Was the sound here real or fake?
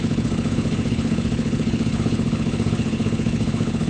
fake